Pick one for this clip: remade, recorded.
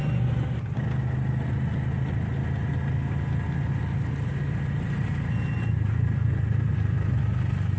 recorded